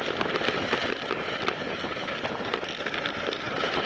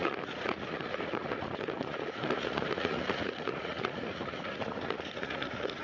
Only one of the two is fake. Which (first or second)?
second